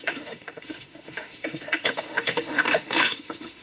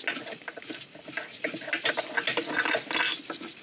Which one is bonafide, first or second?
second